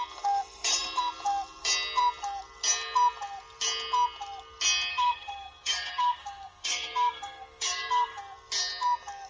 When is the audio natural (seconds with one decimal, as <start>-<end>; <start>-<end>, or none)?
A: 0.0-4.9; 8.2-9.3